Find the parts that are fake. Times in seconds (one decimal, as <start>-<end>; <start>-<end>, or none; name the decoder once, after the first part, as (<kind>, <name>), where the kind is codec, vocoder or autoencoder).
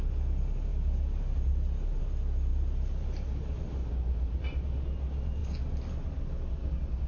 6.6-7.1 (codec, DAC)